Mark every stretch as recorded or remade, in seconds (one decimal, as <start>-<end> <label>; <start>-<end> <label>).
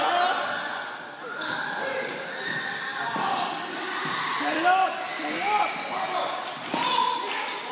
0.0-0.7 recorded; 0.7-1.2 remade; 1.2-2.9 recorded; 2.9-5.1 remade; 5.1-7.7 recorded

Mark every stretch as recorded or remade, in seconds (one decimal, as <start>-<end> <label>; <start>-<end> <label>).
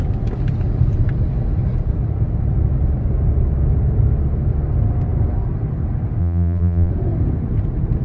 0.0-6.2 recorded; 6.2-6.9 remade; 6.9-8.0 recorded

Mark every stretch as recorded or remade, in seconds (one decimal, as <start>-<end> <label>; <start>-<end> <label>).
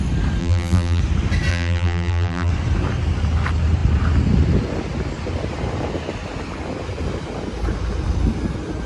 0.0-0.4 recorded; 0.4-1.0 remade; 1.0-1.5 recorded; 1.5-2.5 remade; 2.5-8.9 recorded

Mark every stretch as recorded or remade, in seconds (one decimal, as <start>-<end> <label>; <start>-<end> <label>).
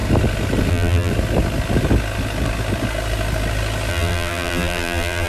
0.0-0.7 recorded; 0.7-1.1 remade; 1.1-3.9 recorded; 3.9-5.3 remade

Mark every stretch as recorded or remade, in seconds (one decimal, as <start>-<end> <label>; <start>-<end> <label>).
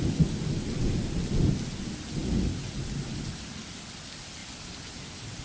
0.0-5.4 recorded